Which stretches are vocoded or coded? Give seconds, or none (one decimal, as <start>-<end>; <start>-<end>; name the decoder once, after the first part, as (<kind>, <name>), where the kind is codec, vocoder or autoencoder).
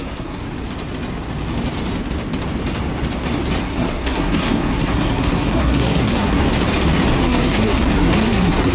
0.0-0.4 (codec, SNAC); 3.6-6.4; 7.2-8.7